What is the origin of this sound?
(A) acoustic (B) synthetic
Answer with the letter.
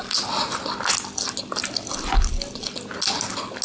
A